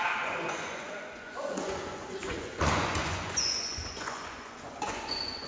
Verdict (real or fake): fake